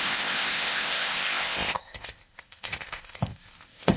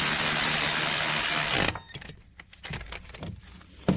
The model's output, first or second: first